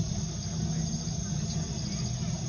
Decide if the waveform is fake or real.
real